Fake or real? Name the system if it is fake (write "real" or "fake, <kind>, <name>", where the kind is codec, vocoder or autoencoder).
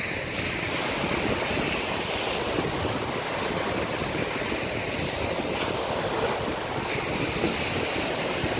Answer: real